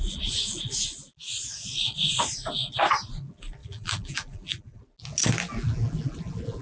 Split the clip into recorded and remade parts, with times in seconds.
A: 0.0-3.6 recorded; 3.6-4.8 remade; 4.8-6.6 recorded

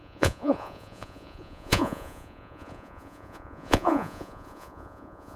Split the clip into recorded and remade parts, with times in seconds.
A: 0.0-5.4 remade

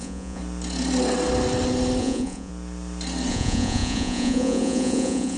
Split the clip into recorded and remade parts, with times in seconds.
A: 0.0-0.4 remade; 0.4-2.0 recorded; 2.0-2.5 remade; 2.5-3.3 recorded; 3.3-5.4 remade

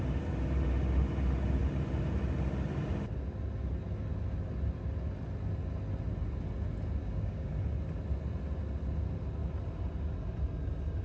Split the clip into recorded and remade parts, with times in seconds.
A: 0.0-7.0 recorded; 7.0-7.5 remade; 7.5-11.0 recorded